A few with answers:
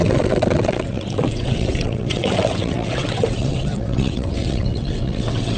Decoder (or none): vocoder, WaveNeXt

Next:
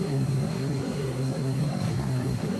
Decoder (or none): codec, SNAC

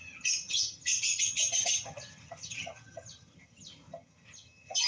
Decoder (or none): vocoder, HiFi-GAN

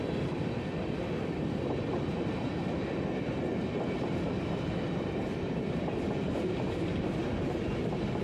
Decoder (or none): none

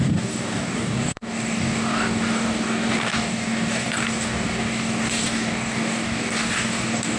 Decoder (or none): codec, DAC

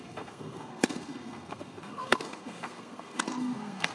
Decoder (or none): codec, SNAC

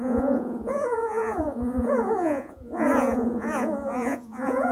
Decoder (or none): vocoder, Vocos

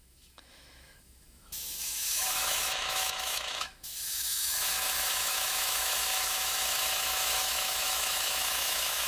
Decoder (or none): autoencoder, DAC-VAE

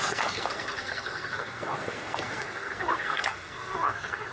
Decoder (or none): codec, SNAC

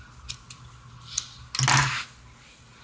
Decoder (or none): none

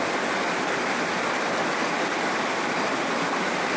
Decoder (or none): none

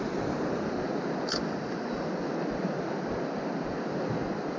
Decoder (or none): none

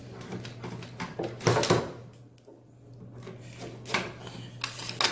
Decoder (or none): none